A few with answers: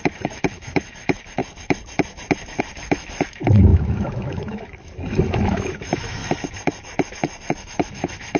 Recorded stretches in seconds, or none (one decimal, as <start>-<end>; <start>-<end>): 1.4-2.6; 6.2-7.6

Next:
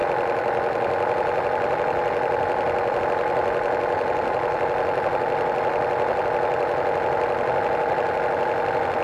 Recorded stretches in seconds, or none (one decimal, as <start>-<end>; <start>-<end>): 0.0-9.0

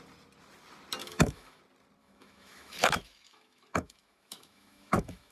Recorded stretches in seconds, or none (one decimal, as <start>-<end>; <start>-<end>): 0.0-1.0; 1.6-2.0

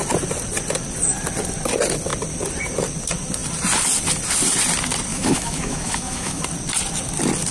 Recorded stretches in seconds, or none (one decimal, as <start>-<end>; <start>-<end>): 0.0-5.1; 6.4-7.5

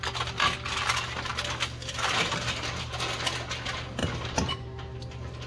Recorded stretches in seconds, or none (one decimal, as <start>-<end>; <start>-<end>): 0.0-5.5

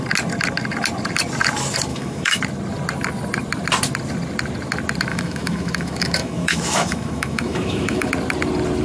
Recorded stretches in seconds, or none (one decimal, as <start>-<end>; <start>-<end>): 0.0-1.9; 2.4-5.1; 8.1-8.8

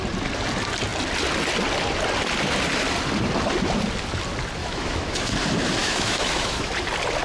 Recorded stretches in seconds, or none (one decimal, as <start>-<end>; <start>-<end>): 0.0-4.6; 5.3-5.8; 6.7-7.2

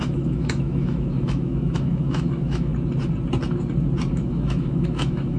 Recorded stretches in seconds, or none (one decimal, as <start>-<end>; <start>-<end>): 2.7-4.1